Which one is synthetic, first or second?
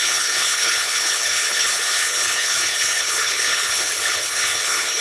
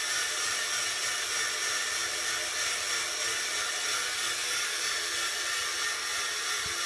first